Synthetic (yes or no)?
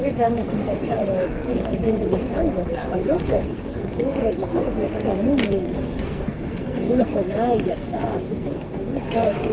yes